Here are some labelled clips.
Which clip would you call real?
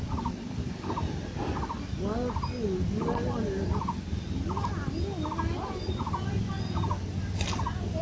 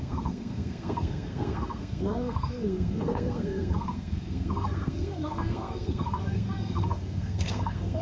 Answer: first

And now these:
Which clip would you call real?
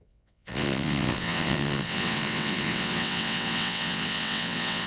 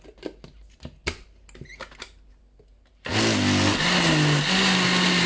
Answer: second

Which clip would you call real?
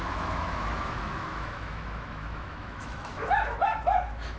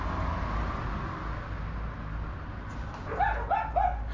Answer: second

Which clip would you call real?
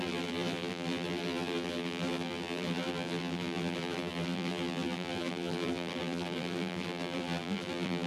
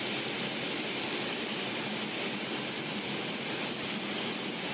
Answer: second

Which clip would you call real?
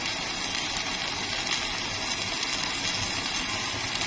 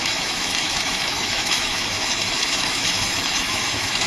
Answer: first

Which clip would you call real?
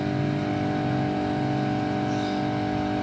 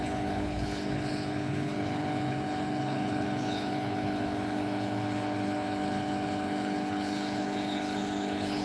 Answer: first